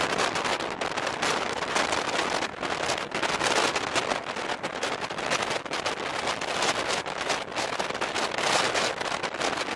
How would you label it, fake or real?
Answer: real